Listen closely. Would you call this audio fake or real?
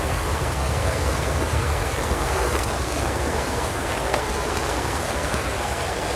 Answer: fake